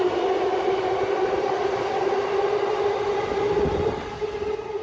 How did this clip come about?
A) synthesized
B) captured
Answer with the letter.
B